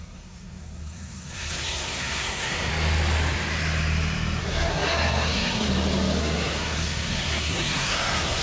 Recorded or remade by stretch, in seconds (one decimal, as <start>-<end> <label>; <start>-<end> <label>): 0.0-2.7 remade; 2.7-4.4 recorded; 4.4-5.7 remade; 5.7-6.2 recorded; 6.2-8.4 remade